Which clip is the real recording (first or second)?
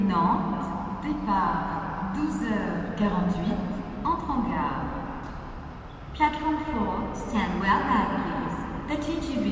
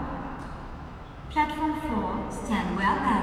first